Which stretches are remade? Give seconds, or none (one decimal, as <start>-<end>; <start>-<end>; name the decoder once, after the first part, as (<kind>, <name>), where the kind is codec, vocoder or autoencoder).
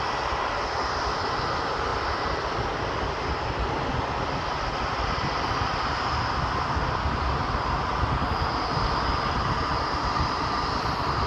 none